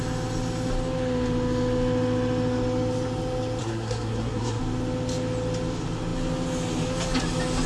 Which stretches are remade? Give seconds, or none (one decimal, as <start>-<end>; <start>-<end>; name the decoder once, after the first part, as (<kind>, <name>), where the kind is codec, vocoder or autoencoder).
3.6-4.6 (codec, SNAC)